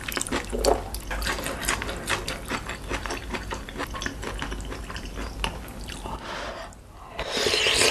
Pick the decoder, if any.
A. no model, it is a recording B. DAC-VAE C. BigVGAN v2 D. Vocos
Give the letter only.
A